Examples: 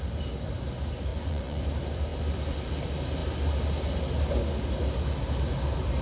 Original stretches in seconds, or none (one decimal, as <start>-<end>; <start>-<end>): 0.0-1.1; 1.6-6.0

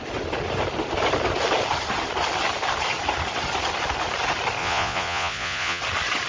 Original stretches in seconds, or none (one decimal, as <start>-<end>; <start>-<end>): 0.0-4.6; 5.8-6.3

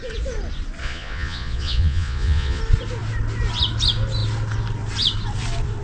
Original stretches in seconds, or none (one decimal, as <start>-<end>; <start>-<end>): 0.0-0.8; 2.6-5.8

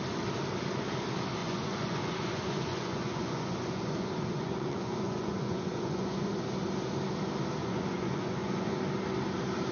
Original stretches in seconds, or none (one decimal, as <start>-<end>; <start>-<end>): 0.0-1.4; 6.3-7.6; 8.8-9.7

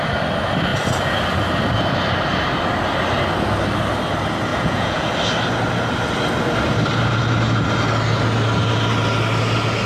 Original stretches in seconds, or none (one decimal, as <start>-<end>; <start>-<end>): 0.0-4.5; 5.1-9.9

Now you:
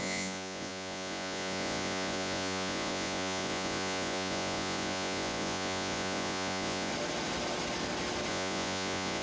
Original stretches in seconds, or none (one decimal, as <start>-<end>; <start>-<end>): 6.9-8.3

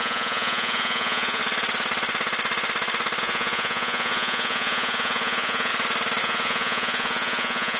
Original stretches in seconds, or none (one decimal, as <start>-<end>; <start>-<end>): 1.4-3.2; 5.7-6.2

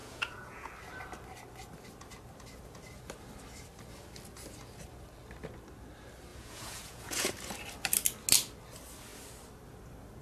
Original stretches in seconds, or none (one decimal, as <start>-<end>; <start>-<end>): 0.7-6.3; 7.3-10.2